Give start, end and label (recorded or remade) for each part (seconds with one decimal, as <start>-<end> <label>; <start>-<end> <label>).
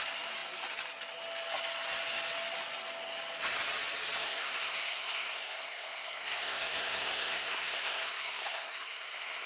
0.0-4.2 recorded; 4.2-9.5 remade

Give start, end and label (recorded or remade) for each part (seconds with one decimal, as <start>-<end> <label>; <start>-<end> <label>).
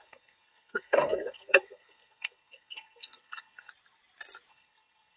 0.0-3.7 remade; 3.7-4.5 recorded; 4.5-5.2 remade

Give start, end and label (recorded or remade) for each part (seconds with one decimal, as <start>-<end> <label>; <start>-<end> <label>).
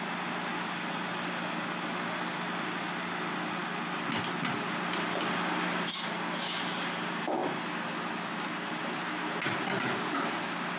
0.0-10.8 recorded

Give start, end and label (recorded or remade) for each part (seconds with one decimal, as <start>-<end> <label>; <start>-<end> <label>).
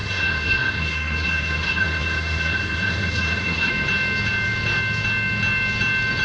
0.0-3.7 remade; 3.7-6.2 recorded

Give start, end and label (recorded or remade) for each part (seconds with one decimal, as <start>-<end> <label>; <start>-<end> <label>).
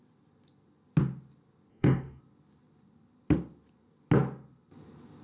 0.0-1.7 recorded; 1.7-2.2 remade; 2.2-5.2 recorded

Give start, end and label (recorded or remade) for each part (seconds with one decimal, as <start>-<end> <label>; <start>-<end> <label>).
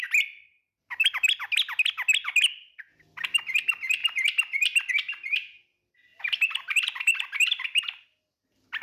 0.0-6.1 recorded; 6.1-8.2 remade; 8.2-8.8 recorded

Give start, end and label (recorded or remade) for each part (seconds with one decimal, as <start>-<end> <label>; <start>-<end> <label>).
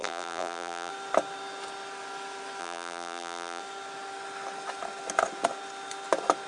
0.0-0.9 remade; 0.9-2.6 recorded; 2.6-3.6 remade; 3.6-6.5 recorded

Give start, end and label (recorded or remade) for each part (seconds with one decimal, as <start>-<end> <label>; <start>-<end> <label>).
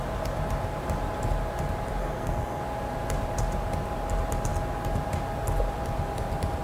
0.0-2.0 recorded; 2.0-2.6 remade; 2.6-6.6 recorded